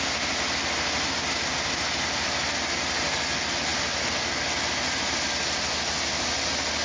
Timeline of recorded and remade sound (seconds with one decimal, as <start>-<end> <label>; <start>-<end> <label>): 0.0-6.8 recorded